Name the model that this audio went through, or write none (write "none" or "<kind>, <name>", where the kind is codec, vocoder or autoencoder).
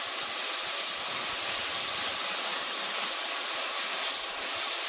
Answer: none